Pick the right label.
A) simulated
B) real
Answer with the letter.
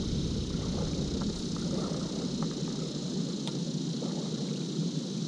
B